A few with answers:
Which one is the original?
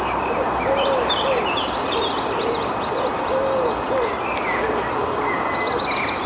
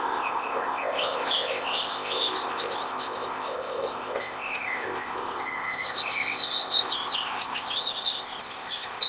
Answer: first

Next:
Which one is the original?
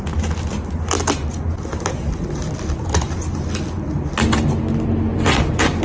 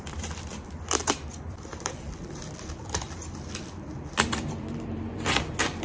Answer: first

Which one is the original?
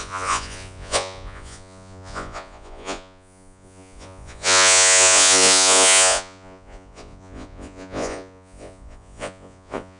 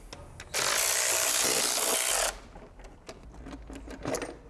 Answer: second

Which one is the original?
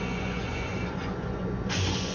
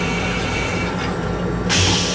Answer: second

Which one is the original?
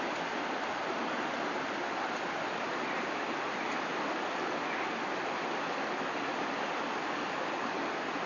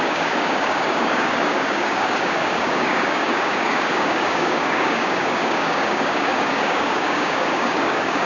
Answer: first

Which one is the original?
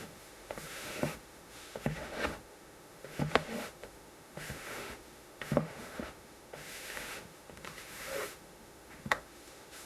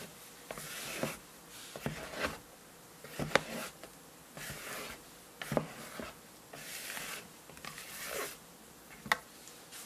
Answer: second